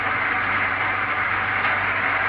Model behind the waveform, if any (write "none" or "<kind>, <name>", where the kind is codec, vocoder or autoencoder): none